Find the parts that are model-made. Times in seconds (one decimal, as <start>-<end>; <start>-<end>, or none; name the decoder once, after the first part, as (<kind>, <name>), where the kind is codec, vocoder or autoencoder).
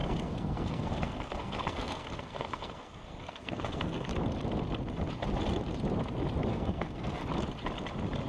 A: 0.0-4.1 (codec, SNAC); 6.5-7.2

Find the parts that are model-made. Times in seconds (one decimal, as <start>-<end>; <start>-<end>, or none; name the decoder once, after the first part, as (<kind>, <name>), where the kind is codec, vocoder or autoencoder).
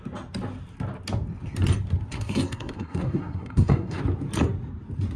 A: 2.1-4.0 (codec, SNAC)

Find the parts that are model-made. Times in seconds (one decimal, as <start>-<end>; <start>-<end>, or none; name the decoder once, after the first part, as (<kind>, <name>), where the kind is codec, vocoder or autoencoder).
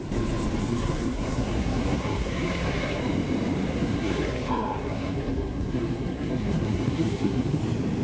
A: 0.6-3.0 (codec, SNAC); 3.7-7.6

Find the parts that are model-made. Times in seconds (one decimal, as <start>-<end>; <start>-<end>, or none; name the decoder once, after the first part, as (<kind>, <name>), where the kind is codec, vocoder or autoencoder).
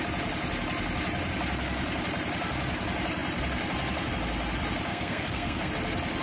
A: 4.9-5.7 (codec, SNAC)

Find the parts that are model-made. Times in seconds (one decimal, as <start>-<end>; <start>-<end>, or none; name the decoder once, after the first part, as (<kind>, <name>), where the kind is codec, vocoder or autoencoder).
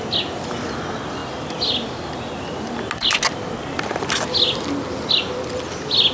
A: none